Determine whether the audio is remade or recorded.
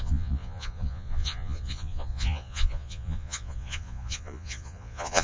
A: remade